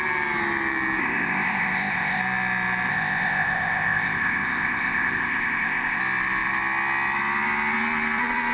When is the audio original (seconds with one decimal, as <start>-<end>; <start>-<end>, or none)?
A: 0.0-1.0; 2.2-2.9; 6.0-8.5